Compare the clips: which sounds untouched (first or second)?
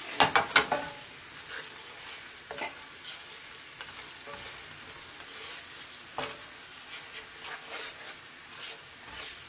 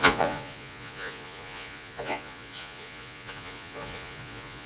first